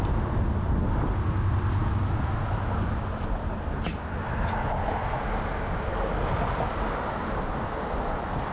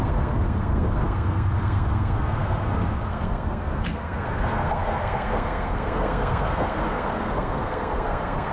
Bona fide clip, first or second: first